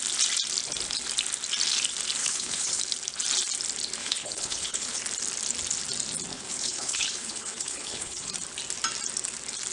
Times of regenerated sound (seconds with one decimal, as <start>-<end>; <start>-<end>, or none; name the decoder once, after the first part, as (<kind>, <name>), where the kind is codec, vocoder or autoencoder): 2.2-2.8 (codec, HILCodec); 4.0-5.0; 6.3-8.3